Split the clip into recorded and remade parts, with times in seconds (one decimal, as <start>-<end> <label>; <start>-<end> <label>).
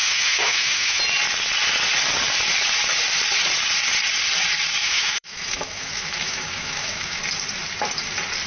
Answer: 0.0-1.0 remade; 1.0-4.8 recorded; 4.8-7.2 remade; 7.2-8.5 recorded